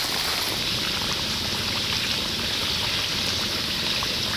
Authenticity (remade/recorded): recorded